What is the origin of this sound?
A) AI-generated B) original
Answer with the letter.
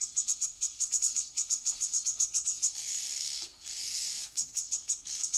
A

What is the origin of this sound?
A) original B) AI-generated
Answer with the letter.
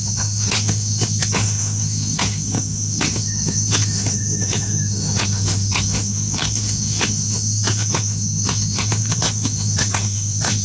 B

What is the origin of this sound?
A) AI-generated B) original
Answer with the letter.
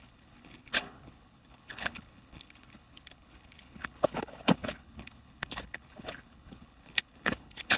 A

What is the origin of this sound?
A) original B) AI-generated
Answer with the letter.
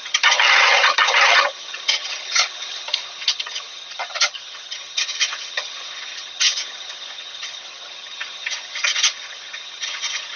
B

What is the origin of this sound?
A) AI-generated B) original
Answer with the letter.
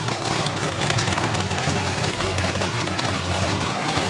A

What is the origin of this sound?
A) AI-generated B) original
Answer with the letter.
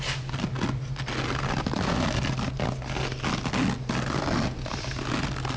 B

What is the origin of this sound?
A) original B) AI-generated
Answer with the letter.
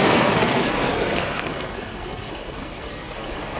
B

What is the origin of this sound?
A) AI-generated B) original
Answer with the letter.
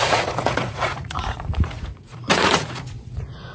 A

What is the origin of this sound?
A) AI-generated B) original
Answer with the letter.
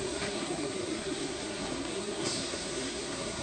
A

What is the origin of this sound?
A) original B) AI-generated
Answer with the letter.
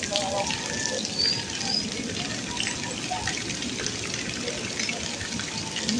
A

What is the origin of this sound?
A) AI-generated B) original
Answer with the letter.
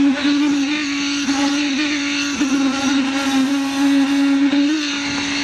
B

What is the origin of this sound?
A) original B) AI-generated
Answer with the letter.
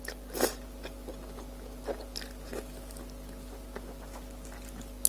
A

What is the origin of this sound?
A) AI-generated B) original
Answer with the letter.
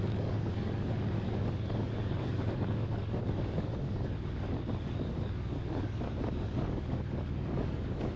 A